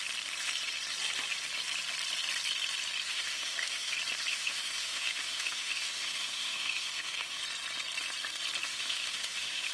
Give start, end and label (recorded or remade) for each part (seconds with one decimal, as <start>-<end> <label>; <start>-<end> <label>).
0.0-3.1 recorded; 3.1-3.9 remade; 3.9-4.3 recorded; 4.3-7.4 remade; 7.4-8.7 recorded; 8.7-9.7 remade

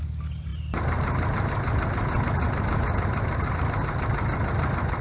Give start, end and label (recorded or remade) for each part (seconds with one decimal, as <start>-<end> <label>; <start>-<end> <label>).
0.0-5.0 recorded

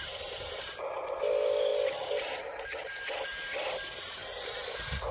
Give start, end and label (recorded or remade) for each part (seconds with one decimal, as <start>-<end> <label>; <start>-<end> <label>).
0.0-5.1 recorded

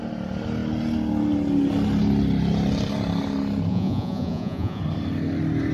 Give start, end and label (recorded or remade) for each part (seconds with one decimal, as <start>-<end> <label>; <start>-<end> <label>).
0.0-3.7 recorded; 3.7-4.8 remade; 4.8-5.7 recorded

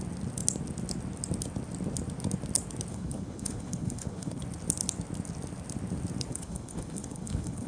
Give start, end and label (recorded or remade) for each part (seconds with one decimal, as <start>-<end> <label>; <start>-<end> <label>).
0.0-2.9 recorded; 2.9-4.4 remade; 4.4-6.3 recorded; 6.3-7.7 remade

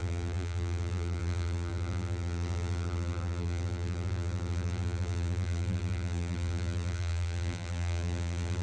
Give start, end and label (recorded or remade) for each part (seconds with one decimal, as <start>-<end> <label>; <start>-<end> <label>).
0.0-8.6 remade

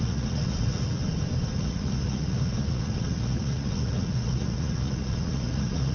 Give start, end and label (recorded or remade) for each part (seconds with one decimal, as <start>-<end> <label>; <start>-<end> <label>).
0.0-1.0 remade; 1.0-1.6 recorded; 1.6-5.9 remade

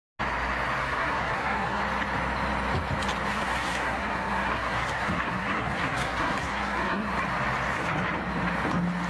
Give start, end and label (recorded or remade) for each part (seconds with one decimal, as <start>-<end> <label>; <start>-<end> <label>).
0.0-0.8 recorded; 0.8-1.8 remade; 1.8-3.3 recorded; 3.3-7.1 remade; 7.1-9.1 recorded